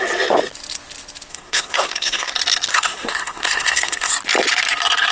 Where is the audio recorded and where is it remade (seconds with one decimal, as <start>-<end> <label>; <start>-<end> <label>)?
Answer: 0.0-1.3 recorded; 1.3-2.3 remade; 2.3-2.7 recorded; 2.7-4.1 remade; 4.1-5.1 recorded